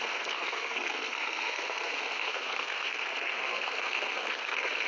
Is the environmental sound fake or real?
fake